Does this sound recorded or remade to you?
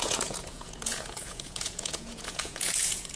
remade